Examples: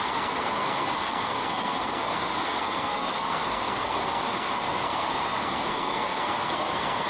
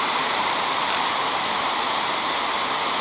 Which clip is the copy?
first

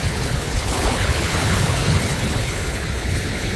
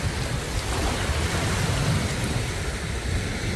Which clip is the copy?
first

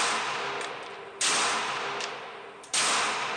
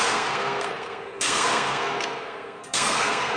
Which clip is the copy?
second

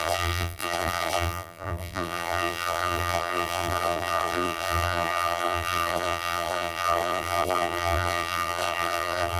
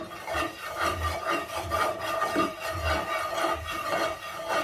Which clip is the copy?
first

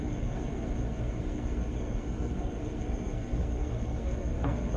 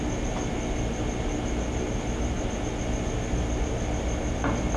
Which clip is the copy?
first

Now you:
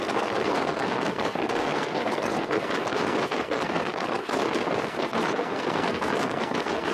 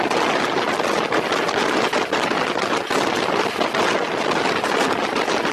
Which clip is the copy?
first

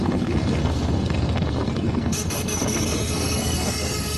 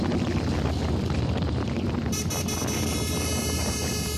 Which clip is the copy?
first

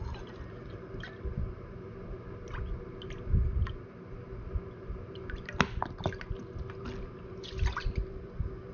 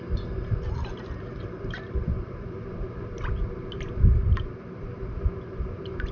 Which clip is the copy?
second